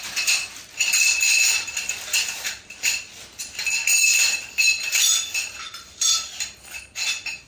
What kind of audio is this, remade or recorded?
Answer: recorded